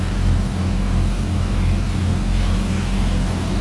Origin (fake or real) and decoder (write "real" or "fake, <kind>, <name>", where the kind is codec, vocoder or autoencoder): fake, codec, DAC